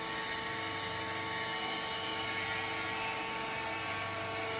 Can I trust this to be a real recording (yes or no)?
yes